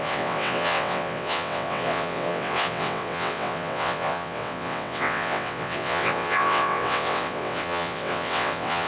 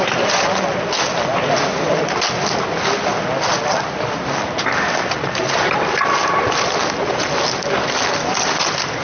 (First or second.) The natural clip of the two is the second